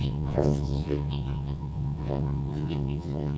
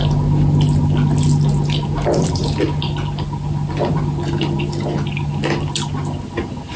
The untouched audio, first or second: second